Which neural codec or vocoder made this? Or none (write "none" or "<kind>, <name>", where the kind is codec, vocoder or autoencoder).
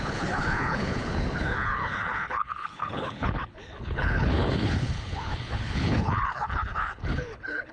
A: codec, HILCodec